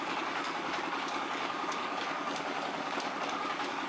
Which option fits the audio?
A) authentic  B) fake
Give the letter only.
B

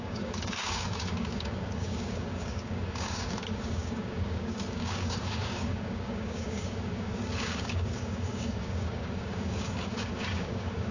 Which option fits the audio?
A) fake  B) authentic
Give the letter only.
A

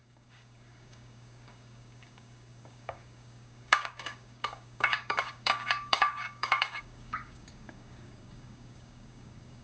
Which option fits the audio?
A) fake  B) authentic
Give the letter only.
A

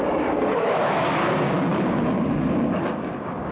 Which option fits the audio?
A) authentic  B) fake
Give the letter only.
B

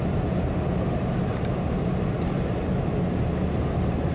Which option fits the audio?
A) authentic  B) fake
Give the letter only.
A